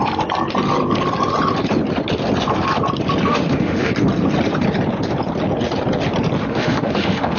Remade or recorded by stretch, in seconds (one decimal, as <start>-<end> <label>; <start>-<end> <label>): 0.0-3.3 recorded; 3.3-3.9 remade; 3.9-6.4 recorded; 6.4-7.4 remade